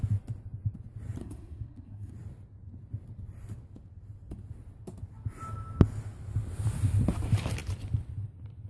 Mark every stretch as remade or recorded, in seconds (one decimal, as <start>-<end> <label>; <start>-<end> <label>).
0.0-1.2 recorded; 1.2-2.1 remade; 2.1-8.7 recorded